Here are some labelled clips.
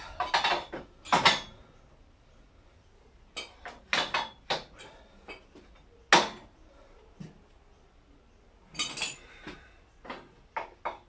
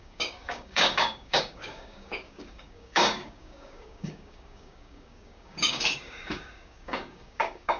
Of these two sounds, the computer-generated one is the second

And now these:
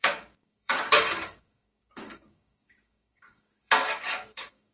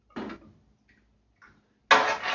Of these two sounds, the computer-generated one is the first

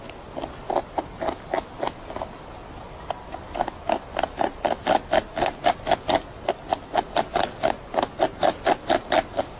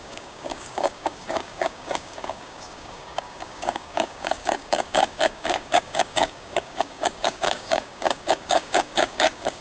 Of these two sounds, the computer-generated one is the second